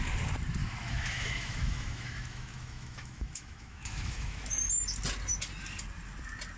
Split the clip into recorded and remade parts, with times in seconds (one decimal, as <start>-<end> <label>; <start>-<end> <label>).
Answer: 0.0-0.6 recorded; 0.6-4.6 remade; 4.6-6.6 recorded